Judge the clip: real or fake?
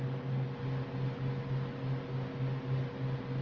real